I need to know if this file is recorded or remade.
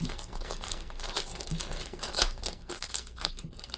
remade